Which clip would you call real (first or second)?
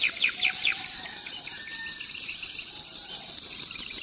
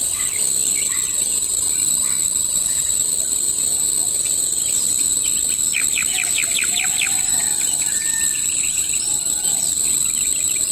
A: second